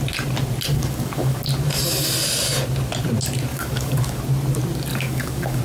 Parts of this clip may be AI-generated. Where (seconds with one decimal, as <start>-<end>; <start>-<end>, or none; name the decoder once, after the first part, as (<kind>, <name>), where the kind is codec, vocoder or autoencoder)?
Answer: 0.7-1.4 (codec, DAC); 3.5-4.2; 4.9-5.6